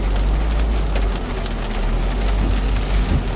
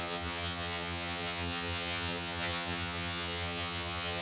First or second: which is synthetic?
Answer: second